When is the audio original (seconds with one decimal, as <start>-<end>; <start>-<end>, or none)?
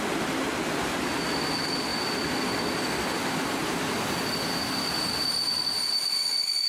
0.0-6.7